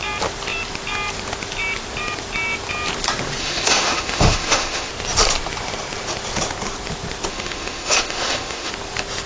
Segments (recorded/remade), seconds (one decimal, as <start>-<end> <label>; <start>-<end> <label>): 0.0-3.4 recorded; 3.4-4.9 remade; 4.9-7.3 recorded; 7.3-8.7 remade; 8.7-9.3 recorded